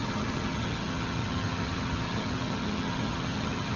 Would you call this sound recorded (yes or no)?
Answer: no